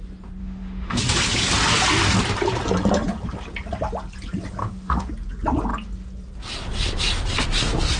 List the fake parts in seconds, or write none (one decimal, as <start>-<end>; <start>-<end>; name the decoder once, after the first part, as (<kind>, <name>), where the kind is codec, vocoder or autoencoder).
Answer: 0.4-1.0 (autoencoder, DAC-VAE); 4.6-5.1